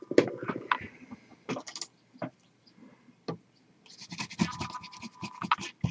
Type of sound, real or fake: real